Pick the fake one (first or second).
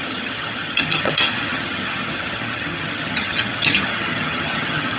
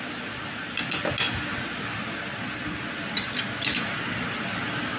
first